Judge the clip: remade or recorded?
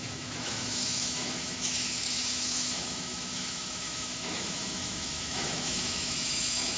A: remade